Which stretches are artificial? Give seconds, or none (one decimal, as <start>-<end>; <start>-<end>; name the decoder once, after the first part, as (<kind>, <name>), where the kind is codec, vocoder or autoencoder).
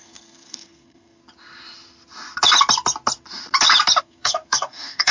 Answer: 0.0-1.2 (codec, SNAC); 4.0-5.1